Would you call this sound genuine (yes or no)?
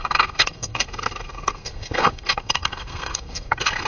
no